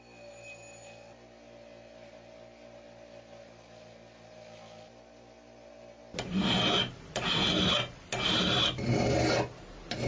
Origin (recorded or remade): recorded